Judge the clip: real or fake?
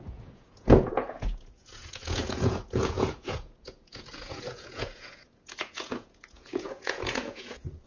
fake